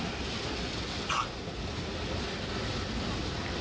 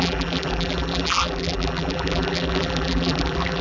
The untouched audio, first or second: first